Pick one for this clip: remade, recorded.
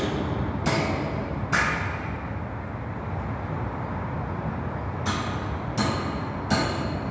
recorded